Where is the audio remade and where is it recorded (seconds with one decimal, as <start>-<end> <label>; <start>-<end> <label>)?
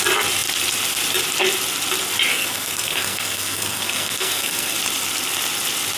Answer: 0.0-2.3 recorded; 2.3-4.8 remade; 4.8-6.0 recorded